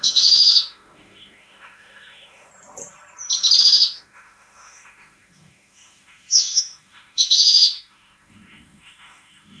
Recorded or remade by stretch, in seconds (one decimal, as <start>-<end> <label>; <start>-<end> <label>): 0.0-2.5 remade; 2.5-3.6 recorded; 3.6-9.6 remade